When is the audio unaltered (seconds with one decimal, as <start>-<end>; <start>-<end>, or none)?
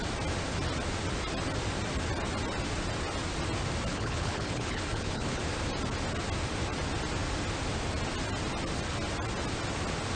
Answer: 0.0-3.9; 5.4-10.2